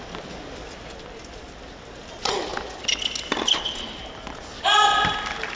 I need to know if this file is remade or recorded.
recorded